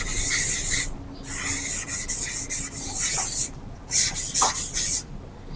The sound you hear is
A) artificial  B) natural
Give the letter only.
B